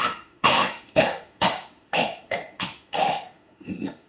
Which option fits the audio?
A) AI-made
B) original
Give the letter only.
A